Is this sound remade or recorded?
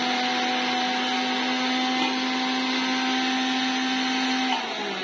recorded